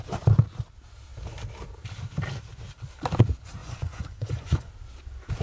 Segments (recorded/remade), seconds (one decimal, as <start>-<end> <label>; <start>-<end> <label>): 0.0-3.6 recorded; 3.6-4.7 remade; 4.7-5.4 recorded